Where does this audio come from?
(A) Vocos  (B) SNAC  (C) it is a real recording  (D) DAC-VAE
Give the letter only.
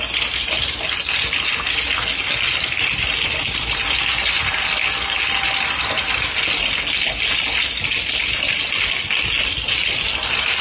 C